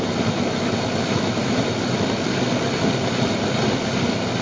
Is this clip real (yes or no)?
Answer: yes